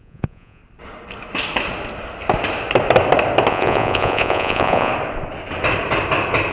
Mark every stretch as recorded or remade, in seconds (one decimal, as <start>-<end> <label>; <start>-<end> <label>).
0.0-0.6 remade; 0.6-3.5 recorded; 3.5-4.9 remade; 4.9-6.5 recorded